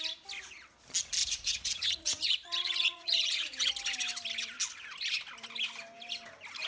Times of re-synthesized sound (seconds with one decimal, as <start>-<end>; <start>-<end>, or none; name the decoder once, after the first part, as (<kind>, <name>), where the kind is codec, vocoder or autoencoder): 1.2-3.7 (vocoder, Vocos)